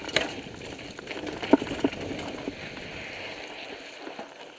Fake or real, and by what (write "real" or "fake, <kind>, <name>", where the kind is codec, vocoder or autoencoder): real